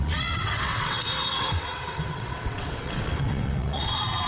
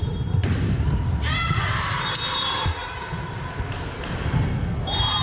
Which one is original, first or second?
second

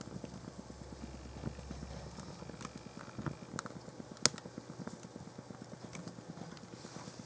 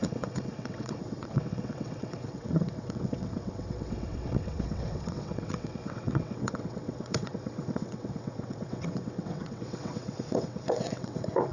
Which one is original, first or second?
first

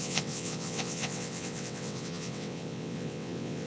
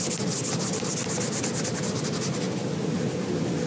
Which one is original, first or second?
second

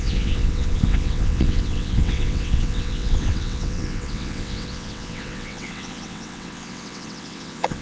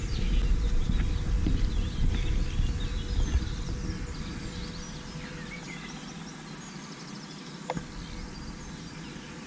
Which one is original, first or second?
second